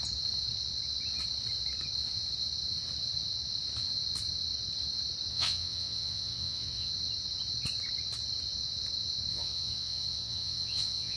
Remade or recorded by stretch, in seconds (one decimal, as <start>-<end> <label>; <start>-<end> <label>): 0.0-5.3 recorded; 5.3-6.9 remade; 6.9-9.3 recorded; 9.3-11.2 remade